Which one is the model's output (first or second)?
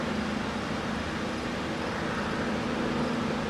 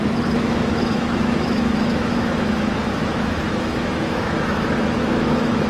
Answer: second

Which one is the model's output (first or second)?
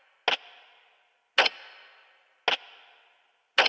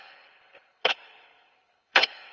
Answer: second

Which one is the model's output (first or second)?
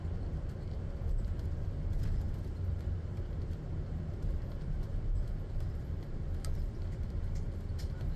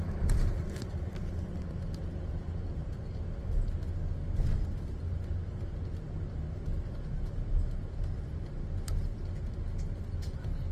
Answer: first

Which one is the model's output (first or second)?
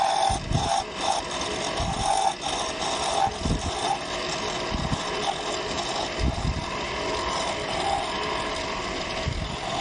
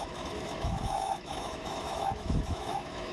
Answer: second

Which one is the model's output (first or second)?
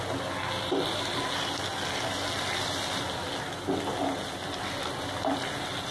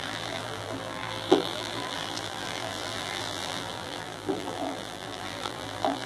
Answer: second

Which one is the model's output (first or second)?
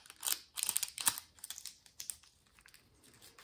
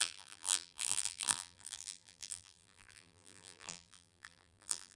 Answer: second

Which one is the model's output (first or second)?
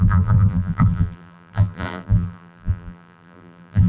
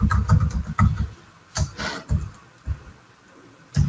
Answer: first